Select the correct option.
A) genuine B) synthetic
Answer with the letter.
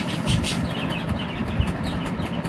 A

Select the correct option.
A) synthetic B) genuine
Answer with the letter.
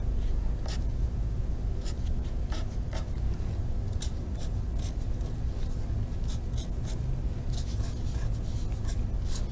B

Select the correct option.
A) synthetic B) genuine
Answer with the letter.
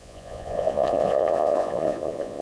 A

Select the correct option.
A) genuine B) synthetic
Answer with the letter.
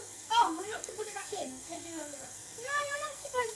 B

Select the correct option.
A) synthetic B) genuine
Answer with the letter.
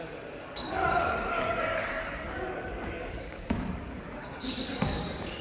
A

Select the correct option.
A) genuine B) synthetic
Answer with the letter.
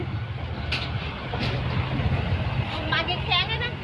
A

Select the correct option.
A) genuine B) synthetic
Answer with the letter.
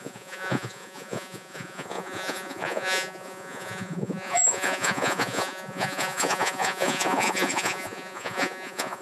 B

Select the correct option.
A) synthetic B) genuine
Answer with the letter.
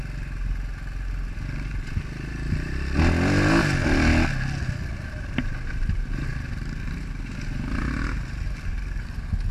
B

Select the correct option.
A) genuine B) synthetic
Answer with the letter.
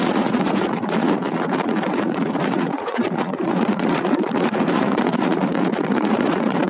B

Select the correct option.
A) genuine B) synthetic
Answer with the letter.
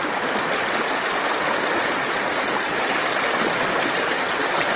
A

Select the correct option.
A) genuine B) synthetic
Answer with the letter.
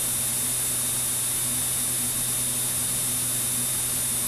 A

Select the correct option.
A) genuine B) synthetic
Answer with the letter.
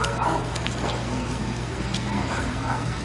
B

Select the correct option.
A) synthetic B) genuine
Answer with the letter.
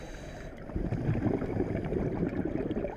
B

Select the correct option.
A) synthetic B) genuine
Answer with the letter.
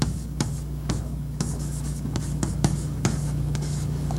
A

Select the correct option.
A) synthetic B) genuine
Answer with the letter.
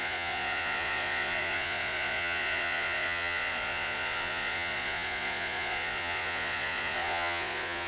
A